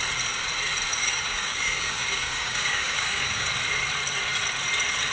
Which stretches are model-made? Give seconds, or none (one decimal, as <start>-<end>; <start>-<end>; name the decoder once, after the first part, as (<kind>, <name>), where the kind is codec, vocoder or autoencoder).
0.9-3.5 (codec, DAC)